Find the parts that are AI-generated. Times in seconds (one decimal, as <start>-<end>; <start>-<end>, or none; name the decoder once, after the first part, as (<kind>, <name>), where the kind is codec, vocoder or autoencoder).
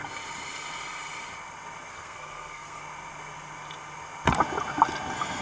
1.9-2.8 (codec, SNAC)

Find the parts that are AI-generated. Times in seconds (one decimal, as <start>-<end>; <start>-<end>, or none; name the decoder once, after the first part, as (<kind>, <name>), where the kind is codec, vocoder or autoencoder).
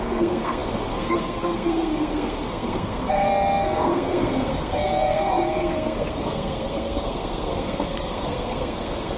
0.0-9.2 (codec, SNAC)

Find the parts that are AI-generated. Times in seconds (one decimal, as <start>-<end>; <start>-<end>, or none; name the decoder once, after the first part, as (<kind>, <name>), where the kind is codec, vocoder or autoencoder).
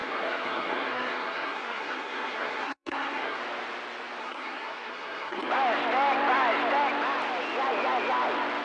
0.0-3.4 (codec, SNAC); 4.2-5.5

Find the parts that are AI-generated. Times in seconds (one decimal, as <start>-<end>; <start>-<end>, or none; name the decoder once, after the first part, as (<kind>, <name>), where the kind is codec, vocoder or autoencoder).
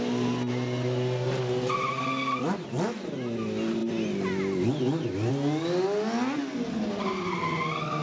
none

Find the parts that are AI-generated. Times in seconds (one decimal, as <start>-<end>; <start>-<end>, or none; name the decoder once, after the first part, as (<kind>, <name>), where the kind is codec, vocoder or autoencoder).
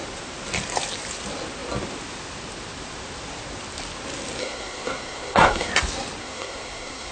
4.4-5.7 (codec, SNAC); 6.2-7.1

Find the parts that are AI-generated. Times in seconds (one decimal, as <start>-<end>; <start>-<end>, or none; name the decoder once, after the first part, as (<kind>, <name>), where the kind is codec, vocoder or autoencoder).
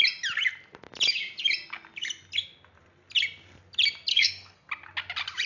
4.1-4.7 (codec, SNAC)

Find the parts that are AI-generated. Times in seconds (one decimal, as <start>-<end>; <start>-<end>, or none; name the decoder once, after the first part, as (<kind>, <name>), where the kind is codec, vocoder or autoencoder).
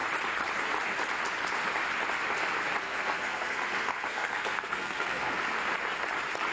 2.8-5.4 (codec, SNAC)